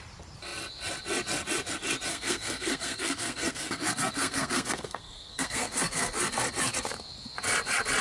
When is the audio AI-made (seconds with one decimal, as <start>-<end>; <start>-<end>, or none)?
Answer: 2.1-6.2

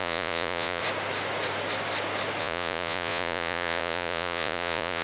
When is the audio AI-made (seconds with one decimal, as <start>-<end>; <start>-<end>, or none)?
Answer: 0.0-0.8; 2.4-5.0

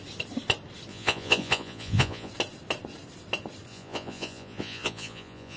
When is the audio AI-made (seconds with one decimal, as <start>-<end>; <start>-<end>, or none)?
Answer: 0.9-2.3; 3.7-5.6

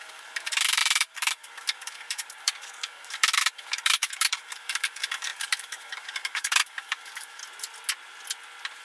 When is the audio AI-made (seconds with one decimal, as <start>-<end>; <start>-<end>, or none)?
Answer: 0.0-7.4

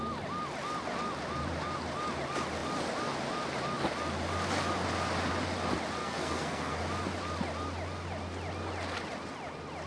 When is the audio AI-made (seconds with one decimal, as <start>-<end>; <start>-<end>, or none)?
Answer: 6.0-6.8

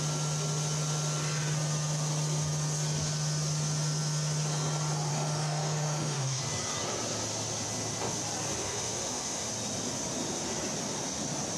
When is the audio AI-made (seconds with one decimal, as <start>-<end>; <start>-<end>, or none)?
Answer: 5.1-6.4; 8.6-9.5

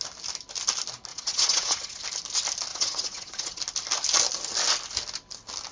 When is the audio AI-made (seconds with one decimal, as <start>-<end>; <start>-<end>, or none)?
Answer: 1.1-2.0; 2.7-3.6